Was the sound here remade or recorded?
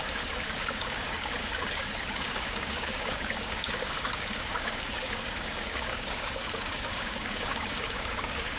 remade